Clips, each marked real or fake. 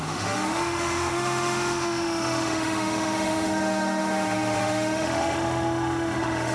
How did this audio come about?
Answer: fake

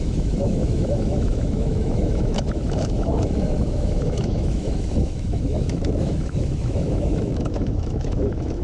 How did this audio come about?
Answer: fake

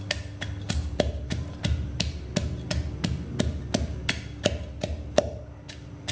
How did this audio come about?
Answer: real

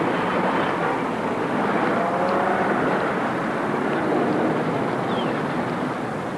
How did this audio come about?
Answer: real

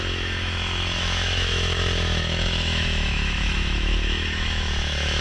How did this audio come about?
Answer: fake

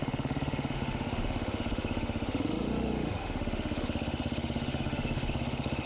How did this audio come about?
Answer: fake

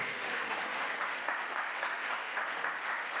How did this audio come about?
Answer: fake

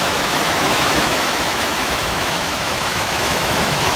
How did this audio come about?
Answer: fake